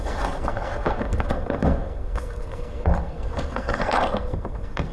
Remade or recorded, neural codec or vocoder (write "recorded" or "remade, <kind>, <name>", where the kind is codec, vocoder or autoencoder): remade, codec, SNAC